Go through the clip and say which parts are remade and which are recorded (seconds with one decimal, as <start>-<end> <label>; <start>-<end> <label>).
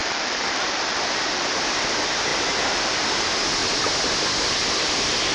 0.0-3.6 remade; 3.6-4.4 recorded; 4.4-5.3 remade